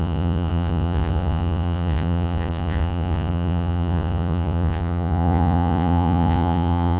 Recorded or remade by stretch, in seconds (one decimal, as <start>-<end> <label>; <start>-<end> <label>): 0.0-7.0 remade